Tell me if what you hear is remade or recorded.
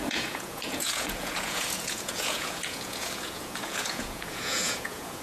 remade